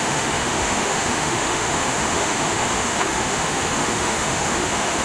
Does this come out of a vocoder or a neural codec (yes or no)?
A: yes